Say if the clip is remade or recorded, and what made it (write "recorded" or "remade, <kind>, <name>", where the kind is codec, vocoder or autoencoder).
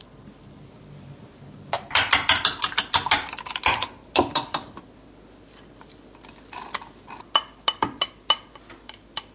recorded